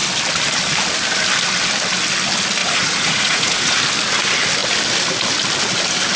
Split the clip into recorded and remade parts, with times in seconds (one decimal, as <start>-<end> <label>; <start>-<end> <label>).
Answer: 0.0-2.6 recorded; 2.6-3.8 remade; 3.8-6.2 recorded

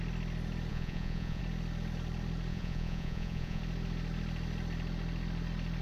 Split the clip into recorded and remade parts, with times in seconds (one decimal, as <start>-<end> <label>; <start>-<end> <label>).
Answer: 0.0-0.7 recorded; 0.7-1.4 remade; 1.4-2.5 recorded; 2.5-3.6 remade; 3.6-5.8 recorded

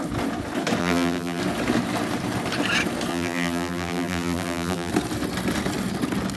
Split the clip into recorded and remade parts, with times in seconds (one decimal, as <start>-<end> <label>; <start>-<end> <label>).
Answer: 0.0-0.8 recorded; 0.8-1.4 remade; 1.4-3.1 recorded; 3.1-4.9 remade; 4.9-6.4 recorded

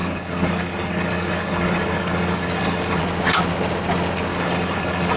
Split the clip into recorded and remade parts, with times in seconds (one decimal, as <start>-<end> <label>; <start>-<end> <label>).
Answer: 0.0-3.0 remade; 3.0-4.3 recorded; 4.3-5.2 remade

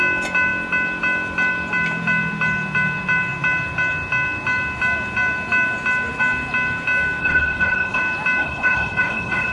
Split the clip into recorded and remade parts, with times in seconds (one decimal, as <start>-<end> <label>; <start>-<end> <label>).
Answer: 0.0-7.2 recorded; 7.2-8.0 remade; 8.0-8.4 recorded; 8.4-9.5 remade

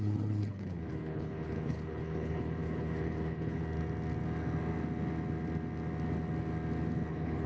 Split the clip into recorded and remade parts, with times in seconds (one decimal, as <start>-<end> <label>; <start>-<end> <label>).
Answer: 0.0-3.6 remade; 3.6-7.1 recorded; 7.1-7.5 remade

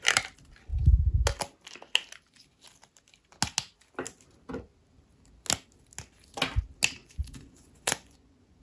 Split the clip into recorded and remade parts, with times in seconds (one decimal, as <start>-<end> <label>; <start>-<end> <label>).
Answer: 0.0-7.0 recorded; 7.0-8.6 remade

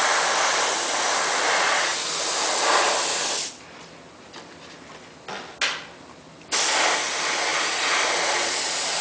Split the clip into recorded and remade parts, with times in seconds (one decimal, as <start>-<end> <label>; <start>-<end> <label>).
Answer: 0.0-9.0 recorded